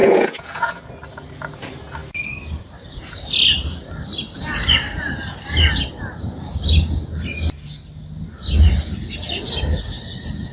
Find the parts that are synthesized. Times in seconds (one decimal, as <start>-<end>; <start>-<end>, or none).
0.0-0.8